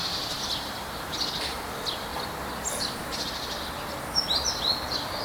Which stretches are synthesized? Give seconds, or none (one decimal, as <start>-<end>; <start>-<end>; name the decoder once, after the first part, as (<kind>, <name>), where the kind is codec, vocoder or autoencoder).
none